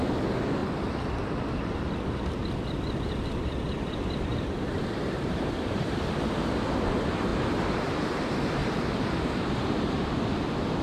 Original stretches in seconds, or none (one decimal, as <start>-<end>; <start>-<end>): 0.0-0.6; 1.1-4.3; 5.8-8.6; 10.2-10.8